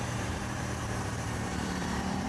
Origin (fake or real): fake